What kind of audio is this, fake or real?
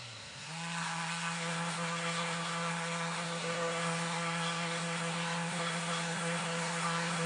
fake